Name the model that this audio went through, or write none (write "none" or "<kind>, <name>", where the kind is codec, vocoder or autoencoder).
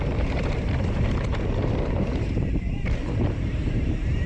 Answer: vocoder, BigVGAN v2